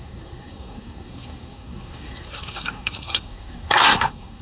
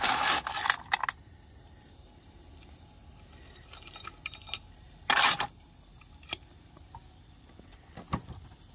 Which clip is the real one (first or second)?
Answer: second